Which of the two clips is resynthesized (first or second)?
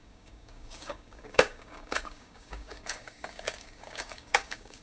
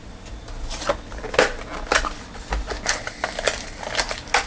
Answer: first